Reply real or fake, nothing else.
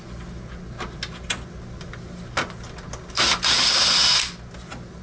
real